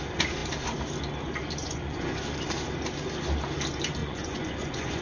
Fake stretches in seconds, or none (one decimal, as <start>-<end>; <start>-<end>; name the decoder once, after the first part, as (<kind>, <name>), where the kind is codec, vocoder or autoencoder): 1.6-2.2 (vocoder, Vocos); 4.0-5.0